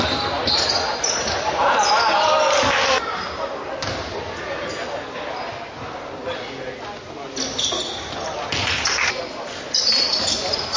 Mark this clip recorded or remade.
recorded